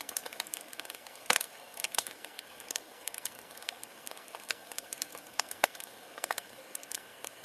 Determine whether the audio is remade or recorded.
remade